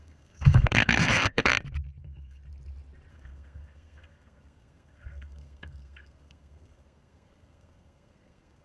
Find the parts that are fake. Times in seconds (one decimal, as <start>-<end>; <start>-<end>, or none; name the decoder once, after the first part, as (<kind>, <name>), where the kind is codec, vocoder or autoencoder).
0.0-1.5 (codec, SNAC); 2.0-2.4; 3.1-8.6